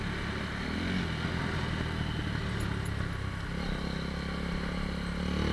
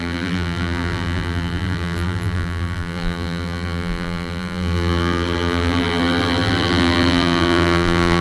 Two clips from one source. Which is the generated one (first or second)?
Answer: second